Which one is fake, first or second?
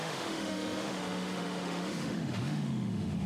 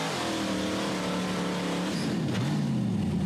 first